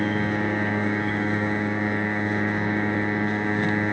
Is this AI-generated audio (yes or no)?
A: yes